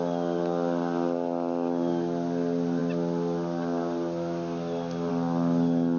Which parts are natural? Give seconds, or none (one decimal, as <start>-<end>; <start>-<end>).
0.0-6.0